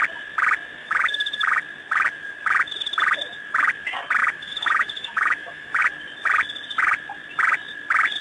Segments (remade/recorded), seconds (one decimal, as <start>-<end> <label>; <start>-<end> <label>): 0.0-0.8 recorded; 0.8-1.6 remade; 1.6-4.2 recorded; 4.2-5.8 remade; 5.8-8.2 recorded